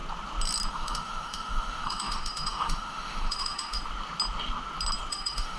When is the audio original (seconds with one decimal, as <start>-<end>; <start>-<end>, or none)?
0.0-0.7; 3.8-5.1